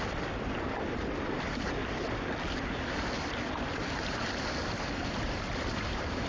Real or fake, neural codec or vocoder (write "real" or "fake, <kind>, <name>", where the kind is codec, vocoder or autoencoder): real